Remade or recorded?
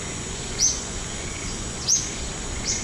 remade